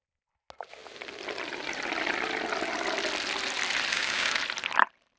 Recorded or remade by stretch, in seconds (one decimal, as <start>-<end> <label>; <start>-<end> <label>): 0.0-3.9 recorded; 3.9-4.4 remade; 4.4-5.2 recorded